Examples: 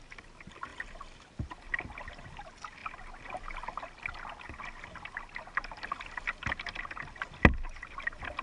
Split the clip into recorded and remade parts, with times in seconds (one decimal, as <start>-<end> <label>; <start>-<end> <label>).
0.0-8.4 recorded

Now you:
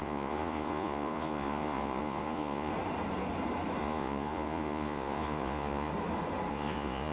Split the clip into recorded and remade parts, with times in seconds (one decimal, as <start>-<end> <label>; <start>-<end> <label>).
0.0-2.7 remade; 2.7-3.8 recorded; 3.8-5.9 remade; 5.9-6.5 recorded; 6.5-7.1 remade

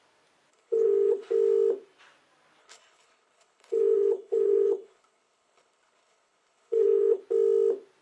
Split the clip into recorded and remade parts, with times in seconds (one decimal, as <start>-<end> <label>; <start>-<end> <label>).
0.0-0.5 recorded; 0.5-1.3 remade; 1.3-2.6 recorded; 2.6-7.2 remade; 7.2-8.0 recorded

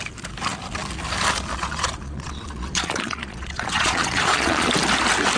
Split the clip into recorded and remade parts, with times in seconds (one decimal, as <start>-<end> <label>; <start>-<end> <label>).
0.0-1.5 recorded; 1.5-4.7 remade; 4.7-5.4 recorded